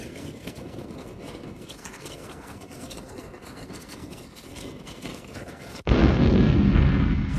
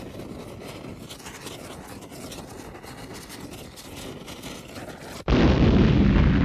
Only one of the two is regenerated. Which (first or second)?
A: first